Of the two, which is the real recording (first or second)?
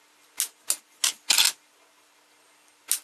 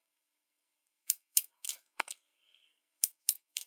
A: first